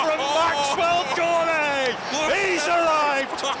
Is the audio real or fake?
real